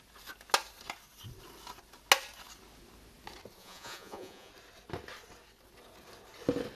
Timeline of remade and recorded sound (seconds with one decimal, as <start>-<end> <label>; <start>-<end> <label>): 0.0-3.6 recorded; 3.6-4.5 remade; 4.5-6.7 recorded